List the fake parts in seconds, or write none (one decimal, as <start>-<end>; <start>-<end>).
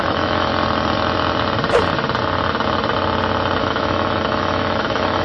0.0-0.5; 3.6-5.2